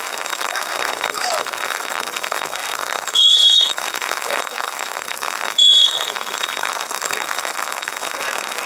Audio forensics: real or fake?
fake